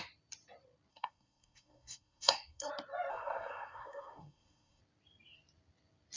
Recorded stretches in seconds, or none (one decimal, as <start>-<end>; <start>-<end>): 0.0-0.9; 2.7-3.1; 4.8-6.2

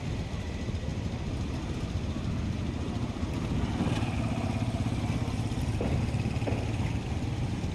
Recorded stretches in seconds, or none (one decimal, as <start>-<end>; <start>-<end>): 0.0-7.7

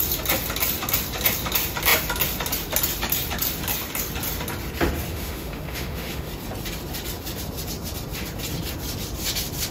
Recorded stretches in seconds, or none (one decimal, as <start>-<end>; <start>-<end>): 0.0-5.1; 6.3-9.7

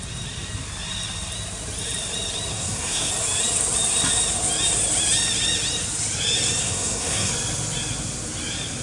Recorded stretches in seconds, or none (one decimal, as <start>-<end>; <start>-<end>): 0.0-2.5; 3.1-6.6; 7.3-8.8

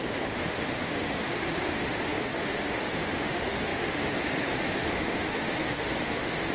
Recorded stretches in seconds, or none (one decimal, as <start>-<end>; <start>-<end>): none